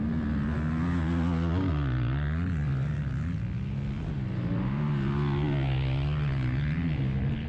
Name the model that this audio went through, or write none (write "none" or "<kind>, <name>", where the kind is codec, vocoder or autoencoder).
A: none